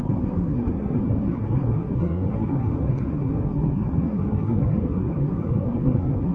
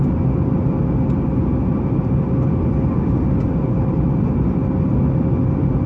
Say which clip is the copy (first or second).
first